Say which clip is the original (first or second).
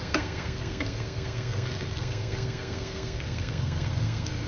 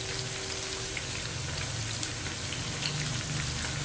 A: second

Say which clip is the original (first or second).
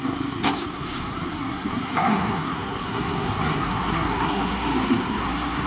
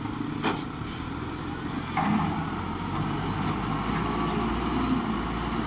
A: second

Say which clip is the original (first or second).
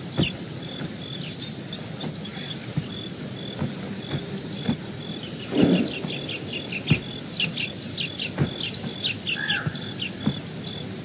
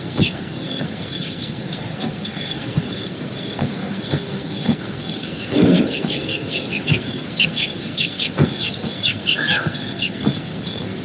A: first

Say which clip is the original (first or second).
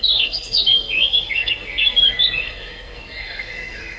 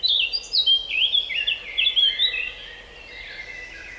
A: second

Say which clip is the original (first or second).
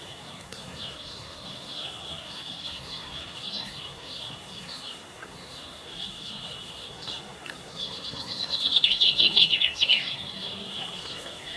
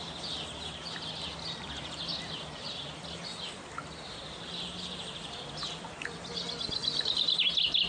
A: second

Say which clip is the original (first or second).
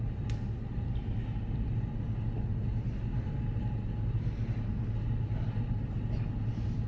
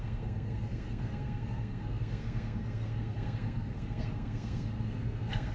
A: first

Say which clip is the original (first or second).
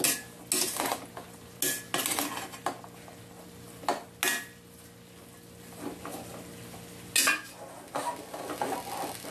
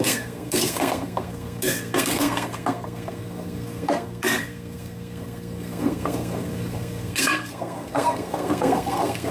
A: first